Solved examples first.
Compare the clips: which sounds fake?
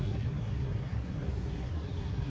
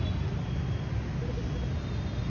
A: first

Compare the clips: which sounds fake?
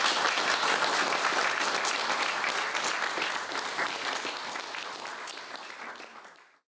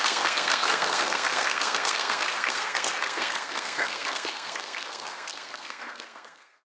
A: second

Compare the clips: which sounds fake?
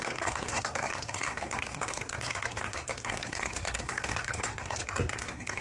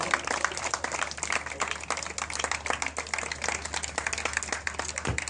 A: first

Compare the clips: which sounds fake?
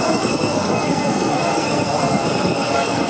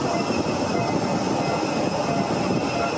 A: first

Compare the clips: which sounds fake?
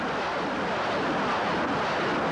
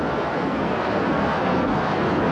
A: second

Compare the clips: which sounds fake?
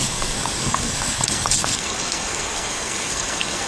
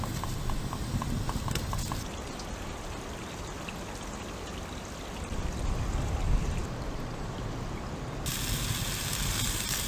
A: first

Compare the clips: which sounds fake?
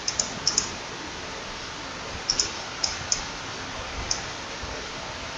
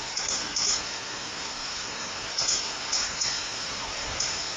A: second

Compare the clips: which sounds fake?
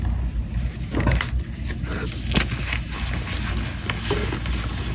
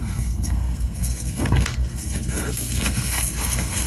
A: second